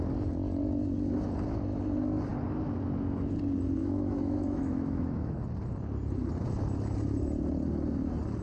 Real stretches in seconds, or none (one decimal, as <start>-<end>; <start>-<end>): 0.0-3.8; 5.4-8.4